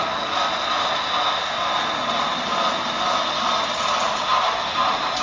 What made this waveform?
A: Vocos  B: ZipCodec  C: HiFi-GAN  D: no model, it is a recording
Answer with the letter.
D